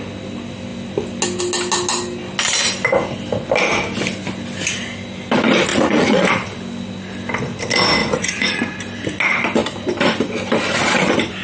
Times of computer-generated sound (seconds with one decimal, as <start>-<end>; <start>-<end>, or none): 5.7-6.3; 8.0-8.6